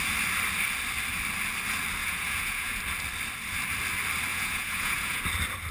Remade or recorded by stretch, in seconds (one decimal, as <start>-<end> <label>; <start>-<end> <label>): 0.0-2.0 recorded; 2.0-2.8 remade; 2.8-4.3 recorded; 4.3-5.2 remade; 5.2-5.7 recorded